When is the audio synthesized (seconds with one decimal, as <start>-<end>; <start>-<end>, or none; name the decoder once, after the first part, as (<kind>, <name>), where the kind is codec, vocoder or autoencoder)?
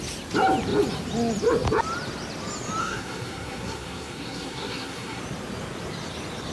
2.8-5.2 (codec, SNAC)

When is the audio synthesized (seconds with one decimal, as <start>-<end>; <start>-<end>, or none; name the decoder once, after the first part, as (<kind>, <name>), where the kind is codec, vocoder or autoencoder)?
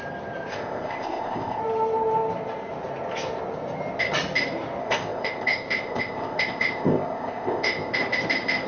0.5-1.6 (codec, ZipCodec); 4.8-7.9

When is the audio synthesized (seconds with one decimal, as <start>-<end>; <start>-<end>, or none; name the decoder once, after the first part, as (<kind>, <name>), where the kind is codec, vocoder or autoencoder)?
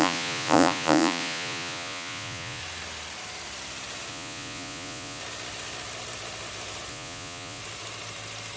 0.0-2.6 (vocoder, Vocos); 4.1-5.2; 6.9-7.6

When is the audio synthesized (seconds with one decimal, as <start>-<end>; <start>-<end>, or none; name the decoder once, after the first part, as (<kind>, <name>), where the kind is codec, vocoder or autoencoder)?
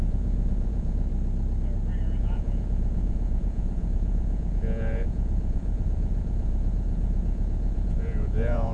0.0-1.1 (vocoder, Vocos); 2.2-8.7